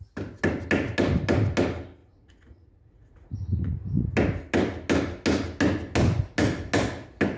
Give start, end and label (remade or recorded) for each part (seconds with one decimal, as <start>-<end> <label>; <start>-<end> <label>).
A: 0.0-2.0 recorded; 2.0-4.1 remade; 4.1-7.4 recorded